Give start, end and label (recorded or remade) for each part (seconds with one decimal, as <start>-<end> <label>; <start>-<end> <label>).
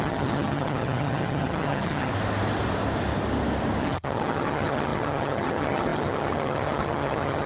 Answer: 0.0-2.1 remade; 2.1-3.8 recorded; 3.8-7.5 remade